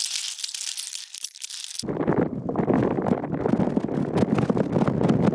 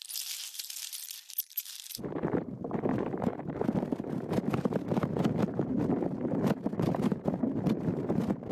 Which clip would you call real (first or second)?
first